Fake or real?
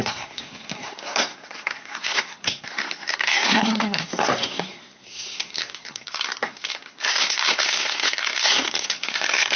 fake